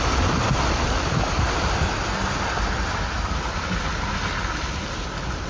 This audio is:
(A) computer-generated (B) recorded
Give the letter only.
B